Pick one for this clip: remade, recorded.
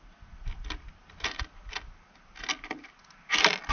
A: recorded